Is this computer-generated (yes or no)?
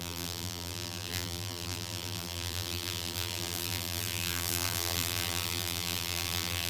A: yes